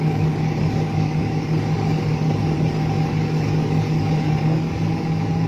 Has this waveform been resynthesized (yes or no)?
yes